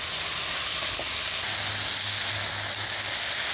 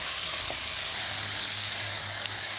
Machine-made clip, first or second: second